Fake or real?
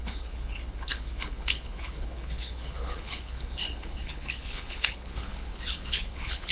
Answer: fake